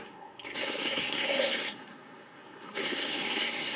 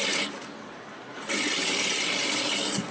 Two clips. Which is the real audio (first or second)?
second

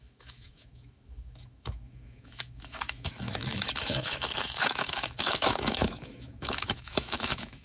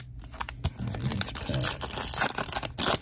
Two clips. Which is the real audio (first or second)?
second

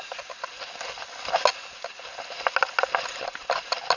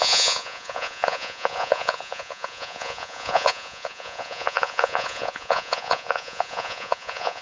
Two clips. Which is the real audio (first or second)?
first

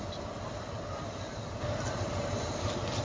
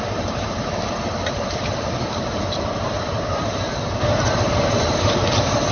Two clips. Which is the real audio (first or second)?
first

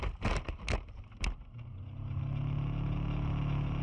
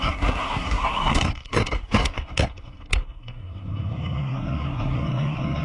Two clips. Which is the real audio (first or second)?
first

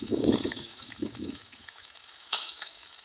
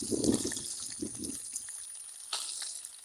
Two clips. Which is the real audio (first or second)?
second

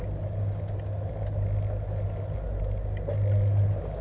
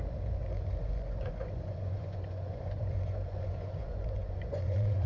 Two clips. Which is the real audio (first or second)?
first